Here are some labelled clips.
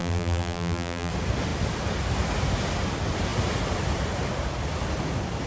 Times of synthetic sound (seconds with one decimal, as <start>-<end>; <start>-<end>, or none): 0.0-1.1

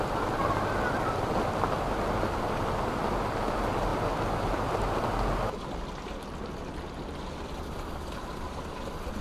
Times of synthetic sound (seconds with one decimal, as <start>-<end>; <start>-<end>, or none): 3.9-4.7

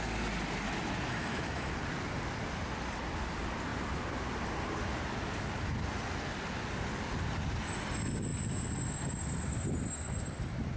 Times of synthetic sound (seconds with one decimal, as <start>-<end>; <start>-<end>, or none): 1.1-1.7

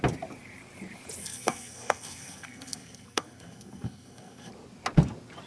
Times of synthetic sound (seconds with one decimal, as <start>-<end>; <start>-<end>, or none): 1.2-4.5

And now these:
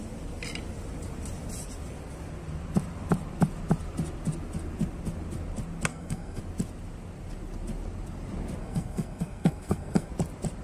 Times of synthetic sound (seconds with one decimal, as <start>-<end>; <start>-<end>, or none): 5.9-6.4; 8.6-10.1

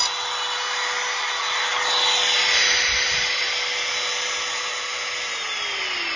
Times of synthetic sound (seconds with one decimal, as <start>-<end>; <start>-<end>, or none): none